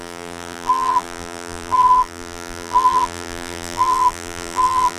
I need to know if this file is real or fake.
fake